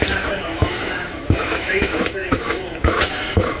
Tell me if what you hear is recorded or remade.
remade